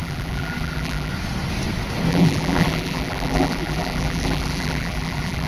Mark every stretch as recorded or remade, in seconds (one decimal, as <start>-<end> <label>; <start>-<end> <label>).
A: 0.0-1.1 remade; 1.1-2.1 recorded; 2.1-5.5 remade